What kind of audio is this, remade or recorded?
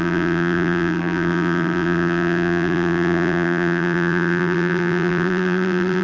remade